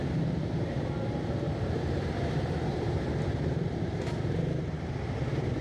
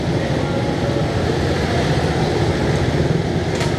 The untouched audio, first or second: second